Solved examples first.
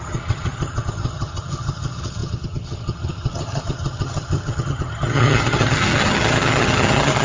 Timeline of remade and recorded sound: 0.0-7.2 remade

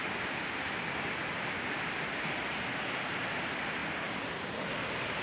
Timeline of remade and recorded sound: 0.0-5.2 recorded

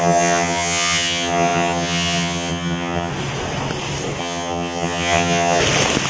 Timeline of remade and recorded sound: 0.0-3.1 remade; 3.1-4.2 recorded; 4.2-5.6 remade; 5.6-6.1 recorded

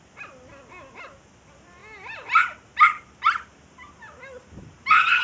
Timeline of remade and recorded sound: 0.0-5.2 recorded

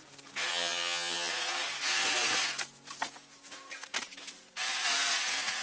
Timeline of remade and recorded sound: 0.0-0.5 recorded; 0.5-1.3 remade; 1.3-5.6 recorded

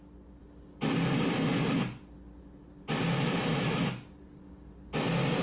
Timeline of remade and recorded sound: 0.0-5.4 recorded

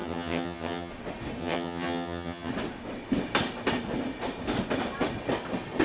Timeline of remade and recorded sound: 0.0-0.9 remade; 0.9-1.4 recorded; 1.4-2.5 remade; 2.5-5.8 recorded